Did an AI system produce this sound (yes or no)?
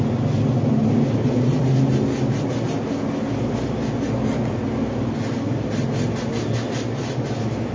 no